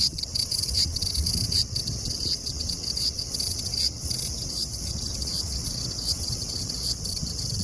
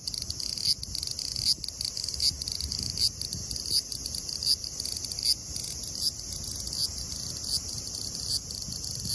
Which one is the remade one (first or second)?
first